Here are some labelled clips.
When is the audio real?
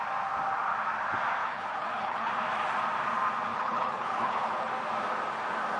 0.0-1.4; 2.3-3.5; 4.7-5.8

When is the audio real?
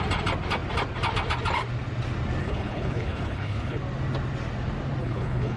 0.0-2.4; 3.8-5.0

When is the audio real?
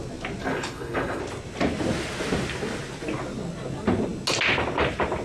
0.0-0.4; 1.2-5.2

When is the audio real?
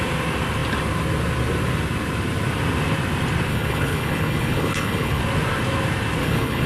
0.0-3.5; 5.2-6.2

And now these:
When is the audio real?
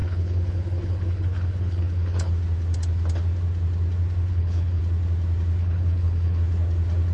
2.3-4.3; 4.8-5.6; 6.4-7.1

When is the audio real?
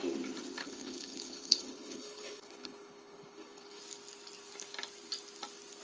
0.0-0.6; 3.8-5.8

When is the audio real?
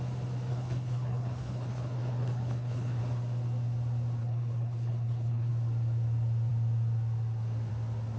0.0-0.5; 3.0-4.2; 5.5-8.2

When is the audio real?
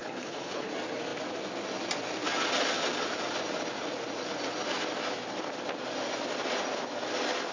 0.7-7.5